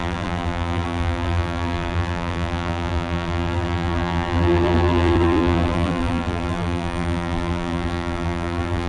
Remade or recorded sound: remade